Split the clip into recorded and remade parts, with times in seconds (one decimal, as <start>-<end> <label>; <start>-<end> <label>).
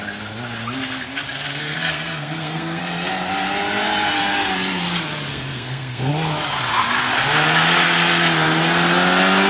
0.0-1.6 recorded; 1.6-2.8 remade; 2.8-5.3 recorded; 5.3-6.1 remade; 6.1-9.5 recorded